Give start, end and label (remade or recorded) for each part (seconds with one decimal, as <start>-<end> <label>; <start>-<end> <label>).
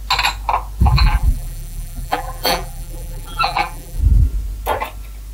0.0-0.8 recorded; 0.8-4.0 remade; 4.0-5.3 recorded